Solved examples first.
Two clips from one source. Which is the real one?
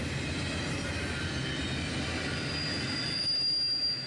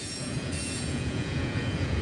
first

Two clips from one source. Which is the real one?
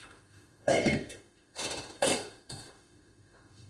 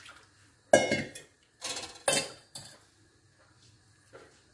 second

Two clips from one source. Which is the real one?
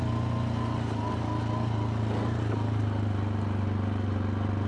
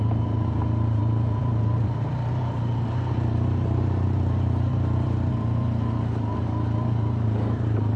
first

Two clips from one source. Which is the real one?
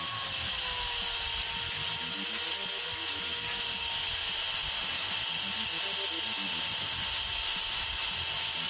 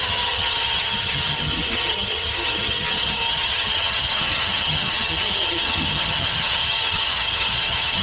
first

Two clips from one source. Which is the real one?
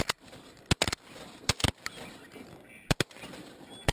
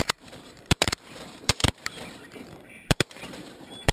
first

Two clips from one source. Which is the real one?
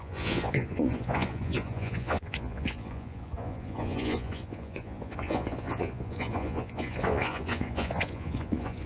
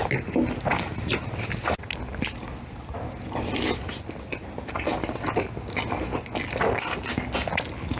second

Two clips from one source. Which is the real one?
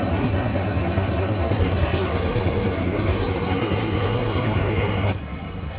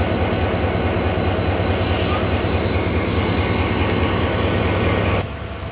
second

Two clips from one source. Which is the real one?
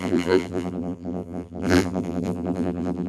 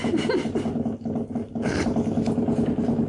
second